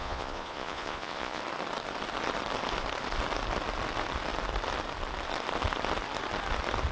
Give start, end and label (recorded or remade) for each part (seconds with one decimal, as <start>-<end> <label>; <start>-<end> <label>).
0.0-1.4 remade; 1.4-6.9 recorded